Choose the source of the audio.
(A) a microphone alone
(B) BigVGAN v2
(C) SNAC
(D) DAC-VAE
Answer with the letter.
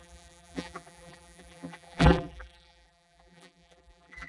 B